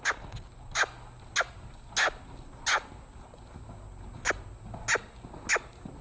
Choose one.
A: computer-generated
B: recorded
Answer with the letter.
B